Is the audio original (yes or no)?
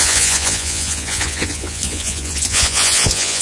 no